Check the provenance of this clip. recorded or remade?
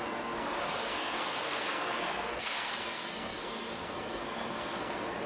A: remade